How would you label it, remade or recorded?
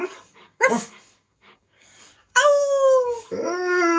remade